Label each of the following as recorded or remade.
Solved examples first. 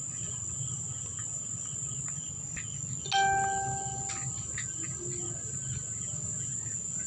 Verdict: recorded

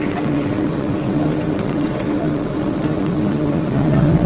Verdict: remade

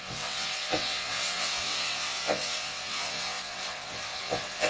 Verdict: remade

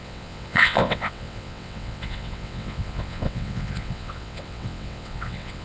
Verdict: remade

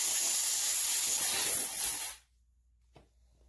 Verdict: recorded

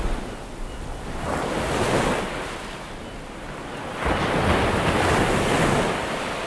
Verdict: recorded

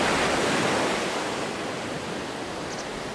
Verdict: recorded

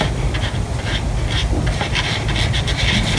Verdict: recorded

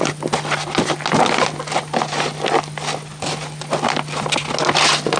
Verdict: recorded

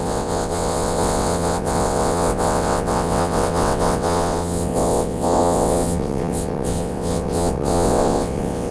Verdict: remade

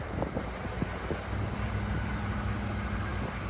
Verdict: recorded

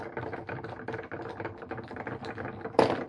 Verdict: recorded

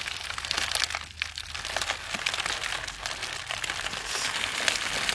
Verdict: recorded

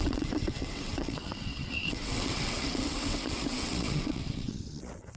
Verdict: remade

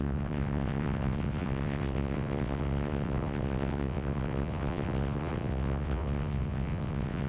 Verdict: remade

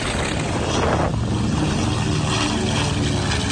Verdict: recorded